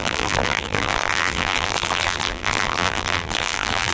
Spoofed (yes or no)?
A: yes